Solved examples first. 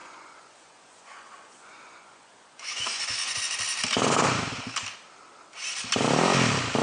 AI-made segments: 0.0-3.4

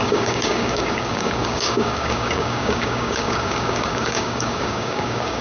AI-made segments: 0.0-5.4

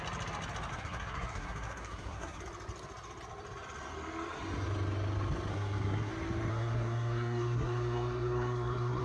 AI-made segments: 0.7-2.4; 5.5-6.1; 6.5-9.0

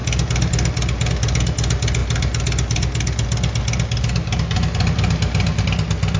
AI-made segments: none

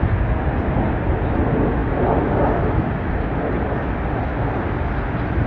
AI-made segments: none

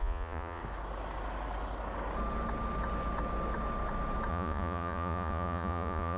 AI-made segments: 0.0-0.6; 4.3-6.2

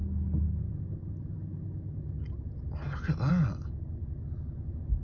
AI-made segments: none

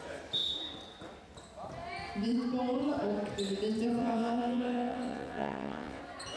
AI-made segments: 4.0-6.0